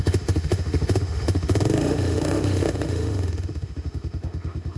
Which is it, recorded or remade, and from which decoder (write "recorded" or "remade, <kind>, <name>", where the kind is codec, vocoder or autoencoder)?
remade, autoencoder, DAC-VAE